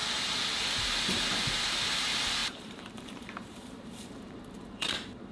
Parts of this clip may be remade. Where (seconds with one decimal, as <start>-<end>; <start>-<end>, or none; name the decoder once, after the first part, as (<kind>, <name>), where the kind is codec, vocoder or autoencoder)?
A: 0.0-5.3 (vocoder, BigVGAN v2)